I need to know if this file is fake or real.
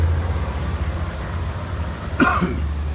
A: real